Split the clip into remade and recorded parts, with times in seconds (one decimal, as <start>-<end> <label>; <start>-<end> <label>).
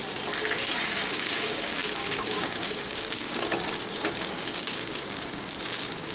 0.0-1.1 recorded; 1.1-6.1 remade